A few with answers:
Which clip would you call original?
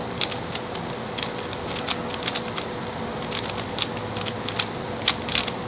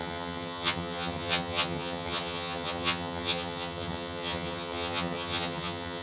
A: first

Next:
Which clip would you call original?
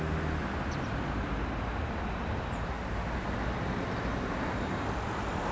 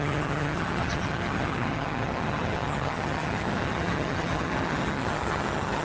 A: first